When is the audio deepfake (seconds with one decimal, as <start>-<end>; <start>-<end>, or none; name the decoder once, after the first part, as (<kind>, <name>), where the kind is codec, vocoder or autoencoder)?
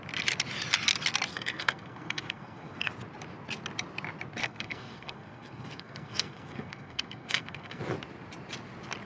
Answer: 1.3-2.9 (codec, SNAC); 4.4-7.8